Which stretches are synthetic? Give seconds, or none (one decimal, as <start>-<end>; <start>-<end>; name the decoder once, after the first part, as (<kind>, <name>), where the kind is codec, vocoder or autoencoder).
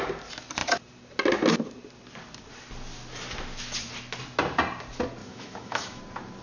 5.2-6.0 (autoencoder, DAC-VAE)